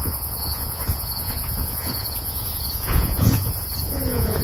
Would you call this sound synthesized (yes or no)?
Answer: yes